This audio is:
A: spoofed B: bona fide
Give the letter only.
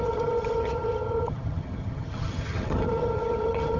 A